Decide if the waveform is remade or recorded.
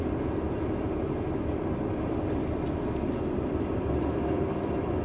remade